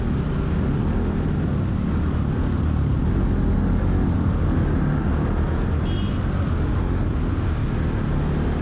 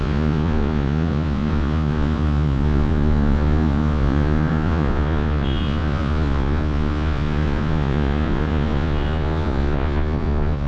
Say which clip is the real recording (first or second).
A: first